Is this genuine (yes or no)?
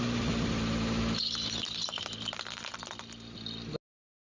yes